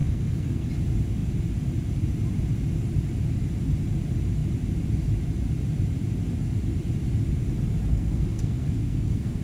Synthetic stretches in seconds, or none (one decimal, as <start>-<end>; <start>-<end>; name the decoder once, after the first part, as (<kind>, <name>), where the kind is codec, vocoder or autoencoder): 0.0-0.7 (codec, SNAC); 7.9-9.4